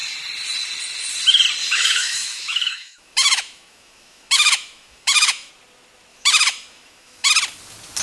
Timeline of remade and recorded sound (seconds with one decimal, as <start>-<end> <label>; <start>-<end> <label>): 0.0-1.6 recorded; 1.6-5.5 remade; 5.5-6.1 recorded; 6.1-7.3 remade; 7.3-8.0 recorded